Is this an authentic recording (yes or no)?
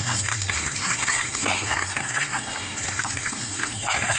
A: no